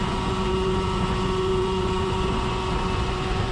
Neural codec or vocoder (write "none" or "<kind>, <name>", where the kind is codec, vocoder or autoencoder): vocoder, Vocos